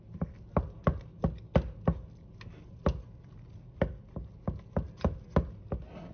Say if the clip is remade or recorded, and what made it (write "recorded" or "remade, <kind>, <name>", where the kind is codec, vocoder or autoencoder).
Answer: recorded